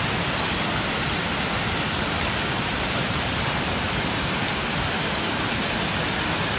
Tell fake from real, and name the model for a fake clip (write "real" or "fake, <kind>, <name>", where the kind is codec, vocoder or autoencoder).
real